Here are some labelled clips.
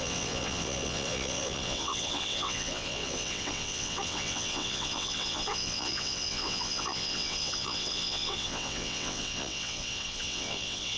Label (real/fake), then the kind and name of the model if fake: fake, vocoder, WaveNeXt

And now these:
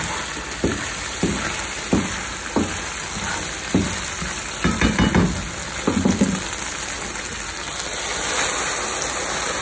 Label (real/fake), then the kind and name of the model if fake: real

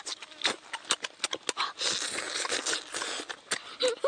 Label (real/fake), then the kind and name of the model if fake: real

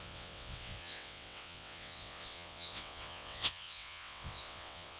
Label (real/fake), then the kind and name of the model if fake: fake, vocoder, WaveNeXt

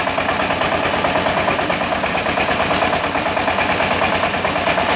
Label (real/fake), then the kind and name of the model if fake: real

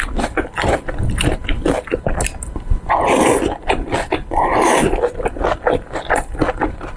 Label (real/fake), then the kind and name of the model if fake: real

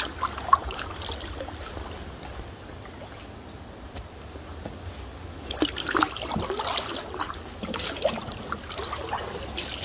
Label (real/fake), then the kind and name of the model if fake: real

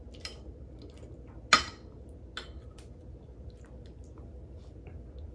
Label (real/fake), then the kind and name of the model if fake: real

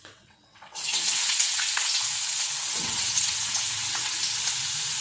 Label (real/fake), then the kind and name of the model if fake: fake, vocoder, WaveNeXt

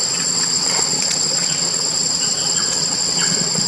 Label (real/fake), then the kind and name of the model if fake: fake, vocoder, WaveNeXt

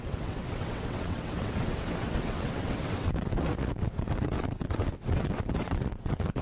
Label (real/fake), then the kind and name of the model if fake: fake, vocoder, WaveNeXt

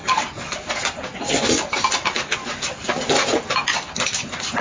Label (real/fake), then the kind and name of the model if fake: real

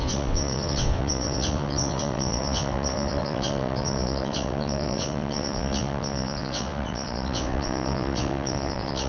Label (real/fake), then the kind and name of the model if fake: fake, vocoder, WaveNeXt